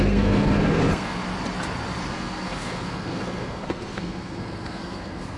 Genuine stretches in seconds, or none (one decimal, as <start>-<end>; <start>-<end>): 1.2-2.1